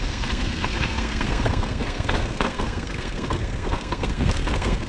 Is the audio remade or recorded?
remade